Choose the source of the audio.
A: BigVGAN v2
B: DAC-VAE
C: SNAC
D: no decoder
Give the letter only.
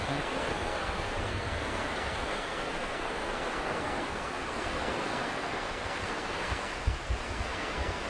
C